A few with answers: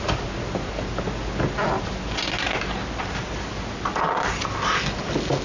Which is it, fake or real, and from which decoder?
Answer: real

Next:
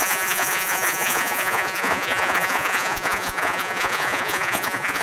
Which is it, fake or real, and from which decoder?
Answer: fake, vocoder, Vocos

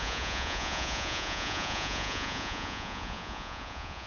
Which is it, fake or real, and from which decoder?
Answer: fake, vocoder, Vocos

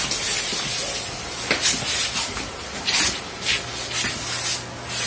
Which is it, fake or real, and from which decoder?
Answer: real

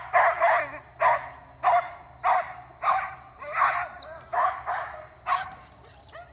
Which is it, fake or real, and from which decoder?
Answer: real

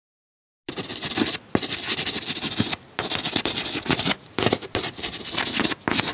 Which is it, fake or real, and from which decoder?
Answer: real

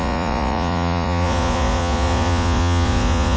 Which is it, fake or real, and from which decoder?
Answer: fake, vocoder, Vocos